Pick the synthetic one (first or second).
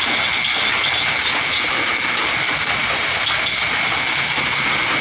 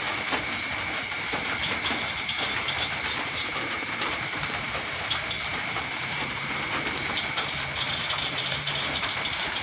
second